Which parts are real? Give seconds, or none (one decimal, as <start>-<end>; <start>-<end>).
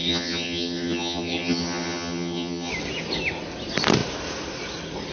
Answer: 2.7-5.1